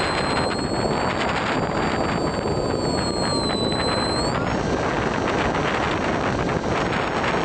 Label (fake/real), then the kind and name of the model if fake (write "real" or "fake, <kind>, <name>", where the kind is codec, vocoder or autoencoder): real